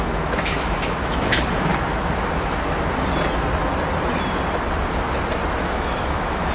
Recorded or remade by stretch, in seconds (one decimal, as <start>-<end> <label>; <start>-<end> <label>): 0.0-1.7 remade; 1.7-5.6 recorded; 5.6-6.5 remade